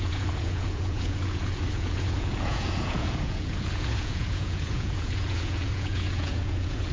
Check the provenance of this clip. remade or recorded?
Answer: remade